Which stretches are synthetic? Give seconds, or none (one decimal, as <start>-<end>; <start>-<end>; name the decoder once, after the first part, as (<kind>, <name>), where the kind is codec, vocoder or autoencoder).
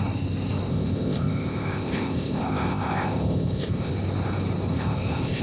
0.7-3.9 (codec, ZipCodec); 4.7-5.4